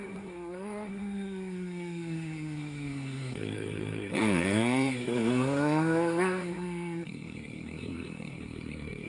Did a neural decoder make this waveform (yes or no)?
yes